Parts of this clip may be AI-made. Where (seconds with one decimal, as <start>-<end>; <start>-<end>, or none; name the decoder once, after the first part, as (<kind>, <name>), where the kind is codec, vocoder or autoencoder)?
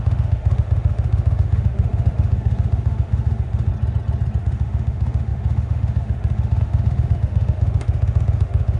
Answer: 0.0-3.7 (autoencoder, DAC-VAE); 4.4-8.8